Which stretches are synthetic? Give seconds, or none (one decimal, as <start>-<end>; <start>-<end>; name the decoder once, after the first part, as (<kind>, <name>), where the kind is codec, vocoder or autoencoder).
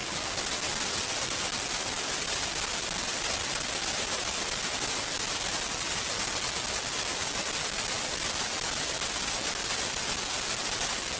none